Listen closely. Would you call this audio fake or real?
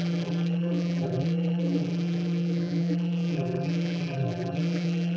fake